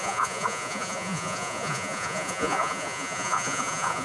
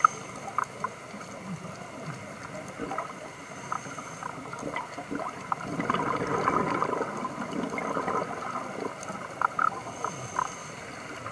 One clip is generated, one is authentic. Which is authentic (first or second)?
second